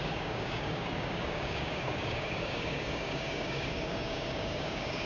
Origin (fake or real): fake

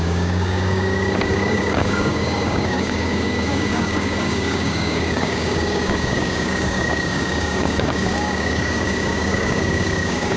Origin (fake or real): fake